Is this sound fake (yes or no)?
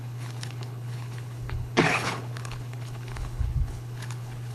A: yes